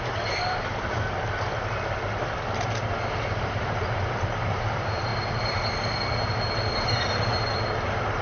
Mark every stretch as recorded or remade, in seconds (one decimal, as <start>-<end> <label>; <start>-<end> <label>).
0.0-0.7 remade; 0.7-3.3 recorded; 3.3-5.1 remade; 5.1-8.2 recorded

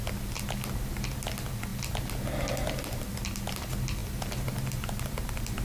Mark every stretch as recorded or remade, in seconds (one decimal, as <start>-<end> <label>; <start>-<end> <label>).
0.0-5.6 recorded

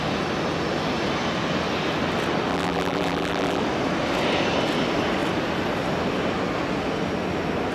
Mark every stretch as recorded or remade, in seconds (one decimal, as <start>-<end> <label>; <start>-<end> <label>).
0.0-2.5 recorded; 2.5-3.6 remade; 3.6-7.7 recorded

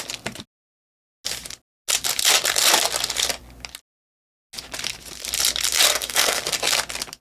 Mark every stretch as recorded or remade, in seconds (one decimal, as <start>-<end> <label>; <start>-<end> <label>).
0.0-5.9 recorded; 5.9-6.4 remade; 6.4-7.2 recorded

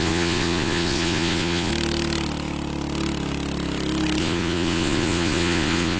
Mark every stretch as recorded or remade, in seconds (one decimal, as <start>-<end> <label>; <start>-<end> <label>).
0.0-1.7 remade; 1.7-4.2 recorded; 4.2-6.0 remade